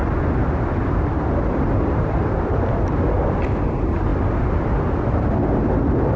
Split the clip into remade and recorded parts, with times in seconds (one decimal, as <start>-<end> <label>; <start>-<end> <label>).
0.0-6.2 recorded